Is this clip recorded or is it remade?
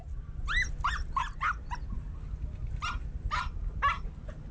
recorded